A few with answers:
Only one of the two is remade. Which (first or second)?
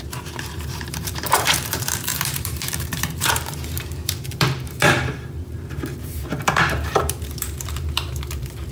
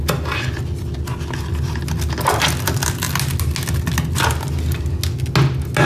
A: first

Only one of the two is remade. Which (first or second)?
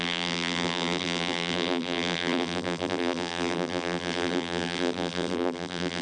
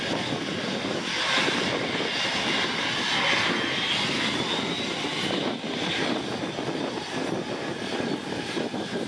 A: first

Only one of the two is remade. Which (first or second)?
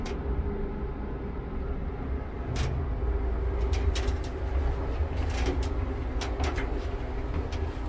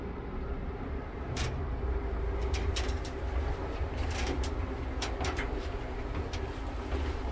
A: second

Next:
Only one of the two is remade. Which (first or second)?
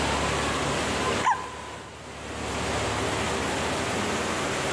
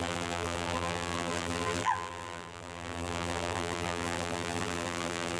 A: second